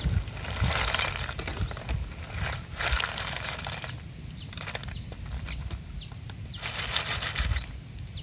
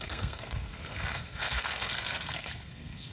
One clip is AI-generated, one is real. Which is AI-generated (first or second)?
second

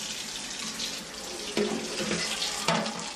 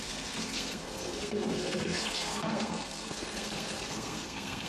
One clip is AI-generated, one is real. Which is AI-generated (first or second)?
second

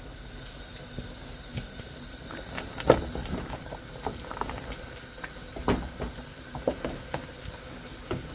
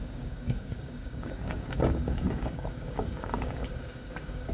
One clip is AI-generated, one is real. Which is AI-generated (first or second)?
second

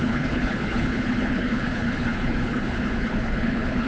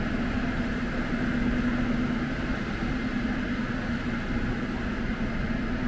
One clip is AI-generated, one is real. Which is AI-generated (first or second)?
first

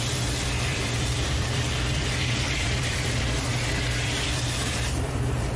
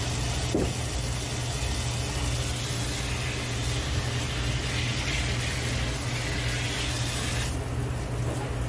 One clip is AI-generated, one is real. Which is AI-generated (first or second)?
first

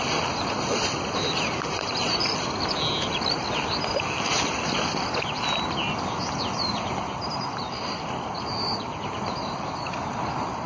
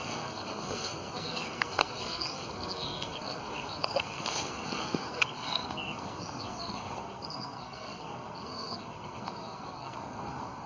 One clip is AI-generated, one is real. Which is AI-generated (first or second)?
second